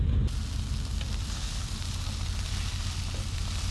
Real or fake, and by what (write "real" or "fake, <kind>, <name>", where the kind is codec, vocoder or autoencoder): real